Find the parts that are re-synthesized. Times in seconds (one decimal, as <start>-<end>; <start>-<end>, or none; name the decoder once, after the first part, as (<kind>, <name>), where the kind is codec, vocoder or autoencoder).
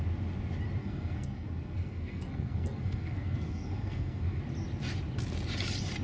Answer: 0.8-4.4 (codec, SNAC)